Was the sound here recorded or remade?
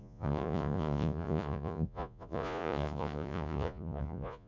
remade